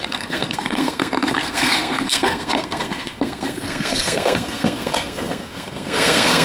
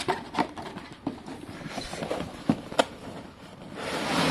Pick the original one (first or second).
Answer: second